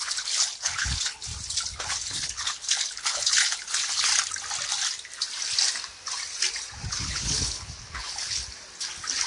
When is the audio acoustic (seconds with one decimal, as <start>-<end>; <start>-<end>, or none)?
1.3-1.8; 4.1-6.9; 8.4-9.3